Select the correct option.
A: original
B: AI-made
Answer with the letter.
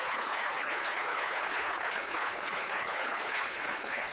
B